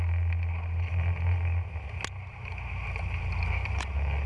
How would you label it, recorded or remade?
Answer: recorded